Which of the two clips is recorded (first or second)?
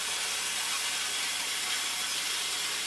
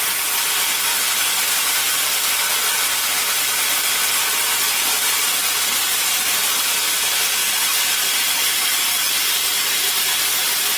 first